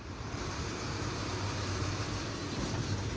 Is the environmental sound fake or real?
real